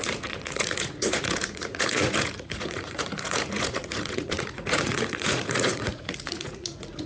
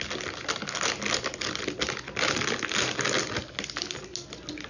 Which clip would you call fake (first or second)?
first